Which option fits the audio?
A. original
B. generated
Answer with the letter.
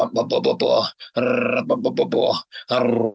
A